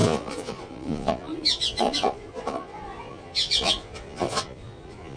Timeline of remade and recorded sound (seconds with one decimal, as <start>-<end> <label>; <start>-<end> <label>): 0.0-5.2 remade